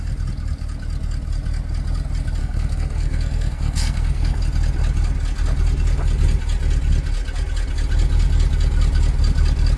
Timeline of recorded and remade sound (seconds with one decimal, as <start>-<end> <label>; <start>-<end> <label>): 0.0-2.4 recorded; 2.4-4.4 remade; 4.4-9.8 recorded